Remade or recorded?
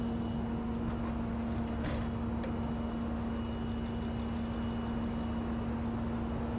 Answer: recorded